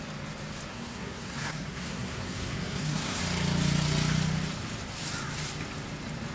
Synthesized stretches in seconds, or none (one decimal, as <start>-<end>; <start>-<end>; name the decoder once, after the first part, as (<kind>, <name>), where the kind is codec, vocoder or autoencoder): 0.7-3.2 (codec, SNAC)